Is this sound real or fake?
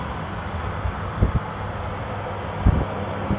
real